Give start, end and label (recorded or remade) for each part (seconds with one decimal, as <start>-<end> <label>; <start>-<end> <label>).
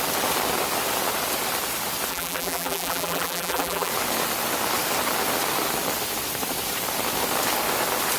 0.0-2.1 recorded; 2.1-3.9 remade; 3.9-8.2 recorded